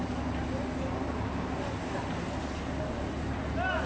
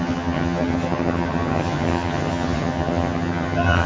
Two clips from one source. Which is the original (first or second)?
first